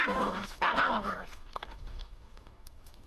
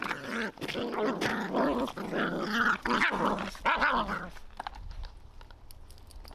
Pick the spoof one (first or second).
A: first